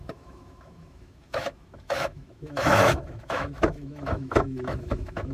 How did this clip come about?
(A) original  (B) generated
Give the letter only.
B